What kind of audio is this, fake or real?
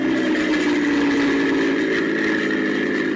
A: real